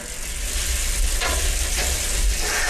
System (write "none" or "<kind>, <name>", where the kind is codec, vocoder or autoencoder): none